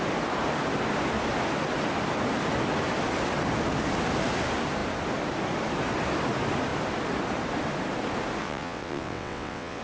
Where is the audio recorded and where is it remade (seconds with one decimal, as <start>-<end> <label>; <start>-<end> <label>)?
0.0-8.4 recorded; 8.4-9.8 remade